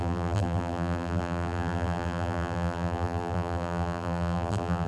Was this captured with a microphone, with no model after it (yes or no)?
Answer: no